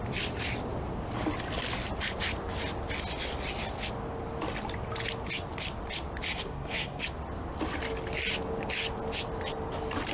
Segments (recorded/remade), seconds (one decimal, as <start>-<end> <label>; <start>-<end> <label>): 0.0-6.3 recorded; 6.3-7.0 remade; 7.0-10.1 recorded